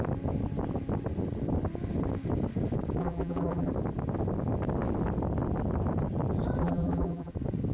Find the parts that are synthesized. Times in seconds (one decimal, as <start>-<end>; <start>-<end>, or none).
3.0-3.7; 6.6-7.3